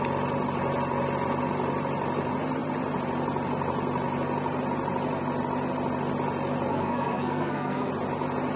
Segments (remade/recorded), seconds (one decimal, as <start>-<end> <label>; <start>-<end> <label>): 0.0-6.7 recorded; 6.7-7.9 remade; 7.9-8.6 recorded